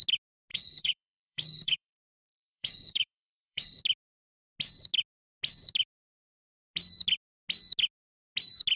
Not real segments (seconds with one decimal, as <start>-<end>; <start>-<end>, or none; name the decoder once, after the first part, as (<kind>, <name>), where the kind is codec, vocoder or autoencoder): 0.5-3.8 (codec, DAC)